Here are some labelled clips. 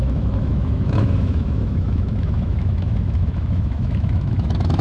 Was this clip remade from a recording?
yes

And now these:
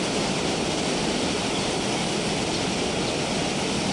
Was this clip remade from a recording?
no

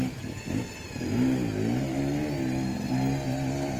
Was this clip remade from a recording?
no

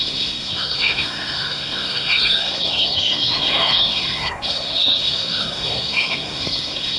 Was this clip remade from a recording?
yes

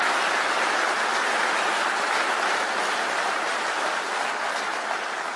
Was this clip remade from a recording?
no